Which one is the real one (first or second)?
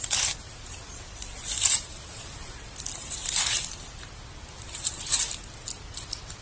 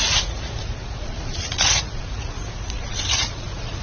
first